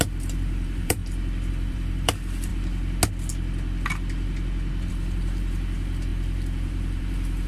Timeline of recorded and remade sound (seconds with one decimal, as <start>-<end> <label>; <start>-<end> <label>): 0.0-1.0 remade; 1.0-1.5 recorded; 1.5-2.5 remade; 2.5-4.9 recorded; 4.9-7.5 remade